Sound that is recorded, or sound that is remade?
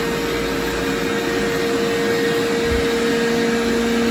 recorded